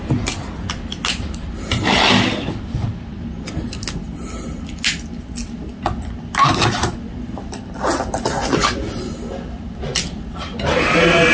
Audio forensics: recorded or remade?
recorded